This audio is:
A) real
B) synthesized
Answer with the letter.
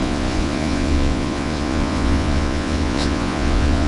B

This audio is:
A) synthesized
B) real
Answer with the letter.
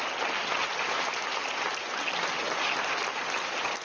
B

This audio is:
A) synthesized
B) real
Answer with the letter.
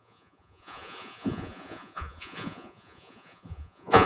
A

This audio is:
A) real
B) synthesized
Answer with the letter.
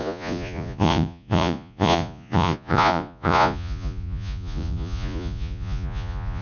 B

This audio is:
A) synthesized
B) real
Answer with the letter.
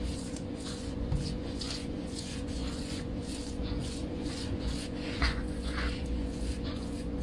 A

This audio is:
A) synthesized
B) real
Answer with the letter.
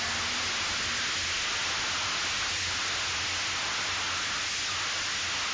B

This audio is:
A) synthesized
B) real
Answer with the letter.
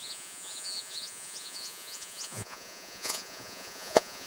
A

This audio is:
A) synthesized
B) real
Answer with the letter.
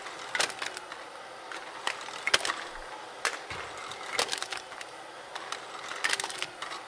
B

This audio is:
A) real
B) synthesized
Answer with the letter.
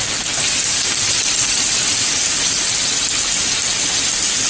A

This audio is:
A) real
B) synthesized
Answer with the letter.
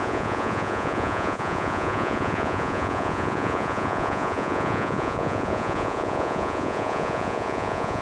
B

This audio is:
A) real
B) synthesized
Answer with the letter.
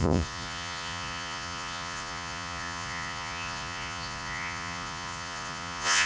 B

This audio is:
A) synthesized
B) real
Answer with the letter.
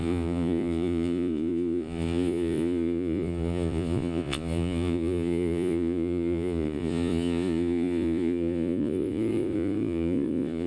A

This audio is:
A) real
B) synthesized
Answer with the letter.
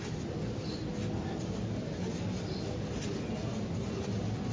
A